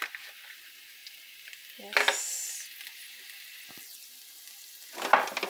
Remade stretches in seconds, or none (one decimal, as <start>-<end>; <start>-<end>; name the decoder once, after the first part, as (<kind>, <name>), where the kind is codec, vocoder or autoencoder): none